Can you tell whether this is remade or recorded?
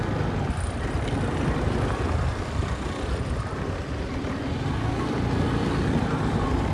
recorded